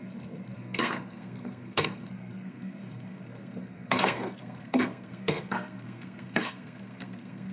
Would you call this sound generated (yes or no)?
yes